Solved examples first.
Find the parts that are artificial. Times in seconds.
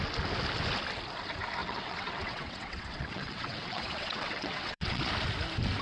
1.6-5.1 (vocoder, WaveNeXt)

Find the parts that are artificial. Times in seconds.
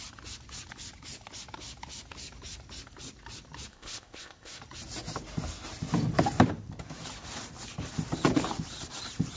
3.7-4.6 (codec, ZipCodec)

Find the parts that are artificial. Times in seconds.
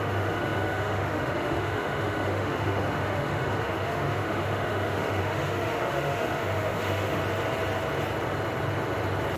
0.0-7.2 (autoencoder, DAC-VAE)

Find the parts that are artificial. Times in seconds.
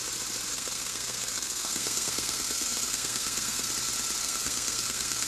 0.5-3.7 (codec, SNAC); 4.2-5.3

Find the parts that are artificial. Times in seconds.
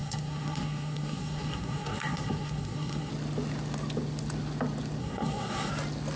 0.0-3.1 (codec, SNAC); 5.0-5.7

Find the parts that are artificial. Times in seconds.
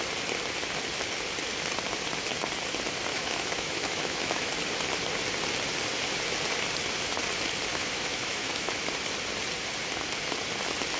3.1-4.5 (autoencoder, DAC-VAE); 7.7-8.9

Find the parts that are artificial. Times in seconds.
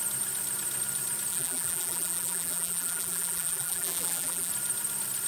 1.3-4.5 (vocoder, BigVGAN v2)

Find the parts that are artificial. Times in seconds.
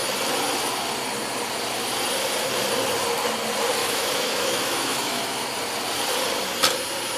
3.8-5.5 (autoencoder, DAC-VAE)